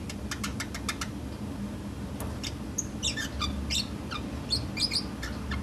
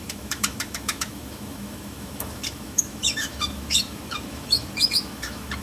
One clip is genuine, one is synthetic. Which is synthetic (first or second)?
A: second